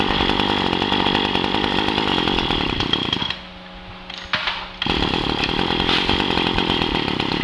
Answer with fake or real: real